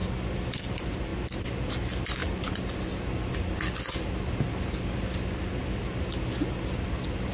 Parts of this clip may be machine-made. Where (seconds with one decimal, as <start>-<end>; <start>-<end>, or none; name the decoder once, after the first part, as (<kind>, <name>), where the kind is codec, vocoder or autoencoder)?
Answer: 0.0-0.6 (vocoder, BigVGAN v2)